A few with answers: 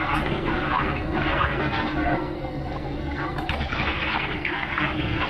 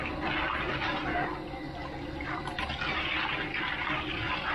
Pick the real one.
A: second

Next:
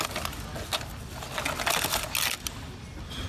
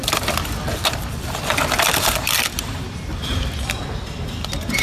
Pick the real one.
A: first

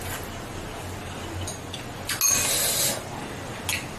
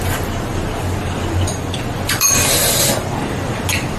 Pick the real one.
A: first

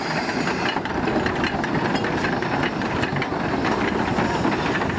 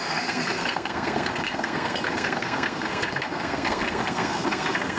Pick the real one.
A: first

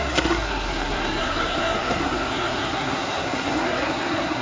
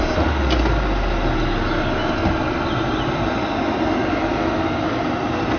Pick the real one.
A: second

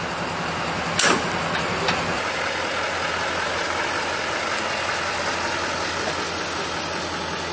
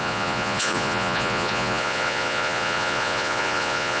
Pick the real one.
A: first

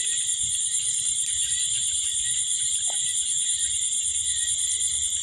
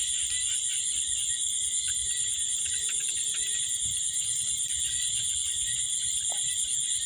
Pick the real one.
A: second